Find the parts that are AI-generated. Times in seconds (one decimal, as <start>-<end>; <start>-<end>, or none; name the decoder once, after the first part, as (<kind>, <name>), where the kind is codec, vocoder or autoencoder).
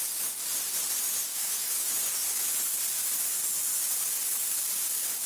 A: 1.3-2.0 (autoencoder, DAC-VAE)